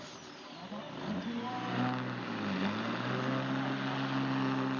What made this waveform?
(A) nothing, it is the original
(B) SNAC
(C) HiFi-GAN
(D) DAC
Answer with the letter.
A